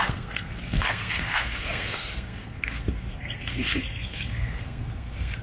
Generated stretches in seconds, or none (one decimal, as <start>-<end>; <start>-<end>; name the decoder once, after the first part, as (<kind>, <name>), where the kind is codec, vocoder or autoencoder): 0.0-5.4 (codec, SNAC)